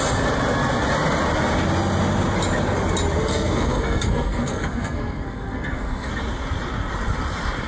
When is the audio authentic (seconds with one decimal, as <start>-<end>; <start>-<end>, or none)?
0.0-3.3; 6.1-7.7